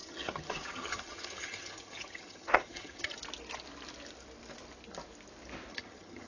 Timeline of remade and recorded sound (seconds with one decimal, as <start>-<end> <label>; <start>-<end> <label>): 0.0-3.2 remade; 3.2-5.7 recorded; 5.7-6.3 remade